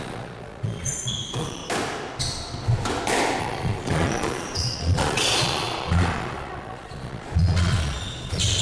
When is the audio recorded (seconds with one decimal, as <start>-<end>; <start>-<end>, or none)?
1.6-3.4